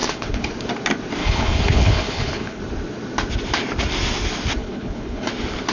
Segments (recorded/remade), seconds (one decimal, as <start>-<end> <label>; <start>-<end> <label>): 0.0-0.5 remade; 0.5-1.2 recorded; 1.2-2.6 remade; 2.6-4.6 recorded; 4.6-5.3 remade; 5.3-5.7 recorded